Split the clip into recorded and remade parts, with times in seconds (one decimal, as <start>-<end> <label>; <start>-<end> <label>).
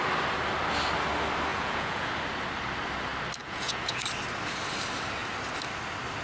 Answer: 0.0-1.5 recorded; 1.5-2.1 remade; 2.1-3.4 recorded; 3.4-4.0 remade; 4.0-6.2 recorded